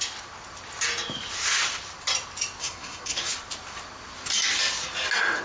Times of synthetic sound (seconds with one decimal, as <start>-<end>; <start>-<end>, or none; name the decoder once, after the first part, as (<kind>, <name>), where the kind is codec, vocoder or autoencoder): 2.6-3.3 (codec, SNAC)